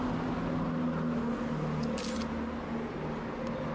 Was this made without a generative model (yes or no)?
yes